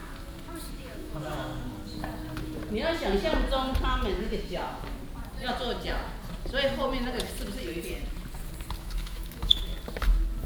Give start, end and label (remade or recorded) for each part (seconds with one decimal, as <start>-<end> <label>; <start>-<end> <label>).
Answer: 0.0-0.7 recorded; 0.7-1.5 remade; 1.5-4.2 recorded; 4.2-5.0 remade; 5.0-8.8 recorded; 8.8-9.7 remade; 9.7-10.5 recorded